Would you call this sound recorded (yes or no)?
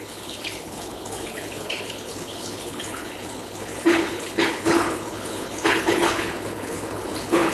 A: no